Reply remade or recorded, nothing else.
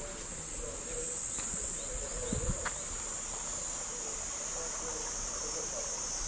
recorded